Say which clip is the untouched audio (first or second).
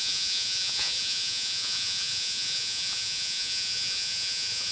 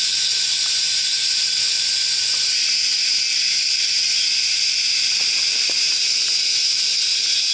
second